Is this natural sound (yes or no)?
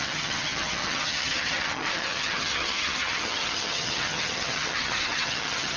no